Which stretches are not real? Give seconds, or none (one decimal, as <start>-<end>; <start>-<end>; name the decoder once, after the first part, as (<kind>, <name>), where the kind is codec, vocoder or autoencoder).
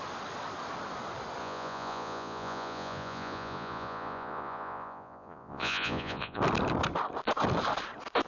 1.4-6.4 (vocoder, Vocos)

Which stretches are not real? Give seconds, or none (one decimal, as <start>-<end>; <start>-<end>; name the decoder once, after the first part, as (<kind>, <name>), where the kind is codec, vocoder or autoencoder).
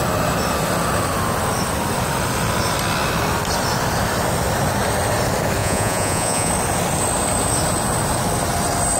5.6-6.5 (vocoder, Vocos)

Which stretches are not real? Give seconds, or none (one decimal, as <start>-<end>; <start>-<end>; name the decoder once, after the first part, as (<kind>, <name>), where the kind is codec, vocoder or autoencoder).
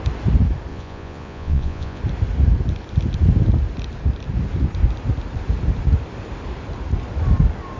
0.7-2.0 (vocoder, Vocos)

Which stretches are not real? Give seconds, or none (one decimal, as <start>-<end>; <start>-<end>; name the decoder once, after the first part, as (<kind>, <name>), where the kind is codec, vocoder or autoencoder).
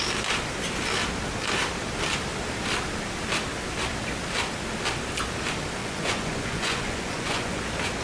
5.8-7.6 (vocoder, Vocos)